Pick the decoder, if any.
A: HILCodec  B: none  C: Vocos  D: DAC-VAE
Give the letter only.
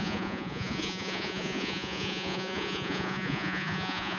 C